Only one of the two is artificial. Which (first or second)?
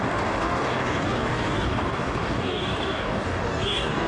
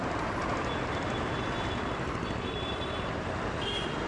first